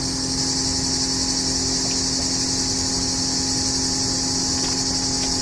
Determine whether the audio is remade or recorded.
recorded